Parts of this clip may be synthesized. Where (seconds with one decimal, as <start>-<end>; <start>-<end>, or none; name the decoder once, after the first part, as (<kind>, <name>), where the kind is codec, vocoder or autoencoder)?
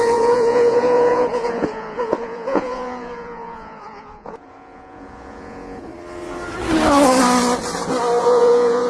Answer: 0.0-5.9 (vocoder, Vocos); 8.2-8.9